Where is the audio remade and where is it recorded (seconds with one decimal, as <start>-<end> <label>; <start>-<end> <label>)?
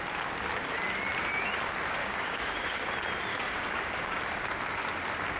0.0-2.0 recorded; 2.0-2.9 remade; 2.9-3.3 recorded; 3.3-4.2 remade; 4.2-5.4 recorded